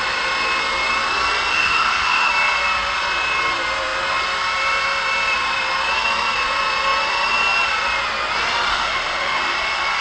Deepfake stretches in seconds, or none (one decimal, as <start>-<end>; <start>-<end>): 1.5-2.3; 8.7-9.4